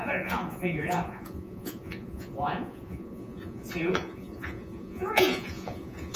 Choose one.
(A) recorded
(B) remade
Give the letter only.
B